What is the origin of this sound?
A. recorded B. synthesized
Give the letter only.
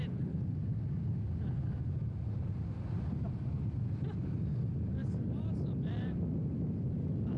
A